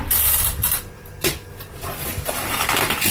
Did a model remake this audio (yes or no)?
yes